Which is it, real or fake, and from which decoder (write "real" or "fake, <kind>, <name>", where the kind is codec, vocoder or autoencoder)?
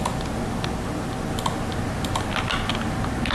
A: real